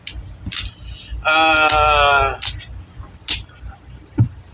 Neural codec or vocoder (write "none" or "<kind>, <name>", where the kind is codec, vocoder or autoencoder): none